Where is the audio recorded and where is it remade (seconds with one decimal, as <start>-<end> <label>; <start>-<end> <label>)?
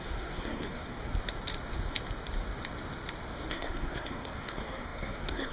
0.0-1.1 remade; 1.1-3.5 recorded; 3.5-5.5 remade